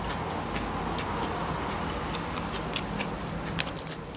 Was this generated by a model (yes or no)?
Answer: no